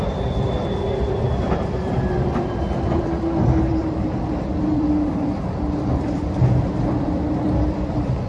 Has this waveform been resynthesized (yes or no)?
yes